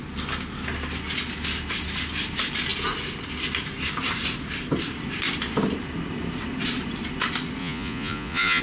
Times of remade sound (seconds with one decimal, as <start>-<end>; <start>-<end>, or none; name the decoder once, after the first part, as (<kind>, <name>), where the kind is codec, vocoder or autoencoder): 7.6-8.6 (vocoder, Vocos)